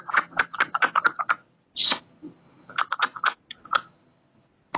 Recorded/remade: recorded